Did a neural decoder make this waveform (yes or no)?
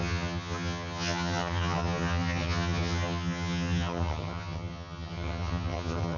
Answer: yes